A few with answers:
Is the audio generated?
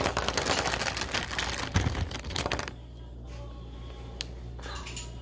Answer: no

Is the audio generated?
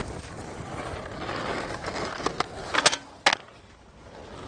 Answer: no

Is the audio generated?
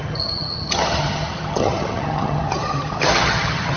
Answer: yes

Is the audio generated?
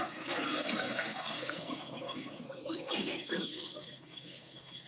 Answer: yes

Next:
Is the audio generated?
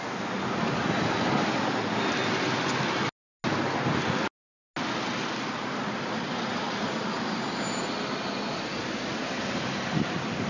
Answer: no